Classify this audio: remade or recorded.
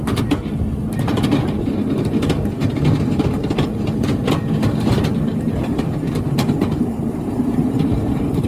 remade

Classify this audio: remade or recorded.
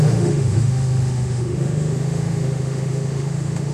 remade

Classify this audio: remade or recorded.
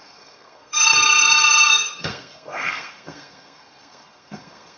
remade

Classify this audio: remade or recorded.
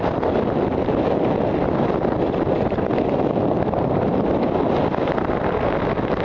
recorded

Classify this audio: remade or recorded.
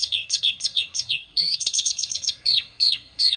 remade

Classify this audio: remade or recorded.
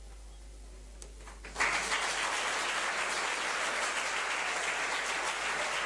recorded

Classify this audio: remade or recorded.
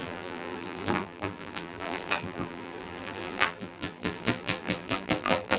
remade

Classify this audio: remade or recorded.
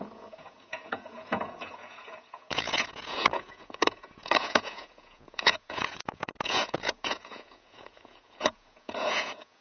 remade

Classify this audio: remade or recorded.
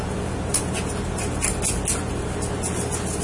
recorded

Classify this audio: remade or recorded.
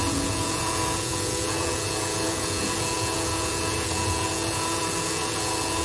remade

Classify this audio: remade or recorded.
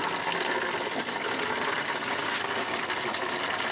recorded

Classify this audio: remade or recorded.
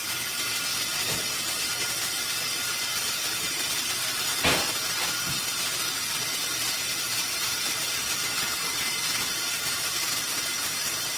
recorded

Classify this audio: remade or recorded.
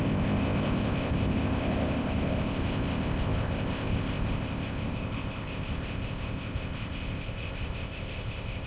remade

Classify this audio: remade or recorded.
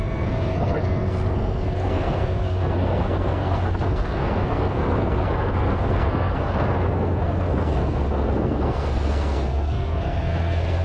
remade